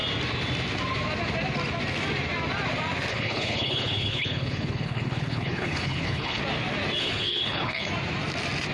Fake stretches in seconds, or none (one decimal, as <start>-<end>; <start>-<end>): 3.1-6.4; 7.0-7.9